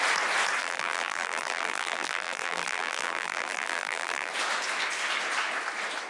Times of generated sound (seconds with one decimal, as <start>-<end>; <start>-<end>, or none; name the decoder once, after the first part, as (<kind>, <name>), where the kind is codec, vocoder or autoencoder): 0.6-4.3 (vocoder, BigVGAN v2)